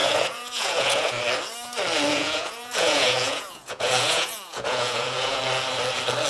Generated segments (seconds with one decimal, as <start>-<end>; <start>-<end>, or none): 0.0-1.2; 2.1-5.4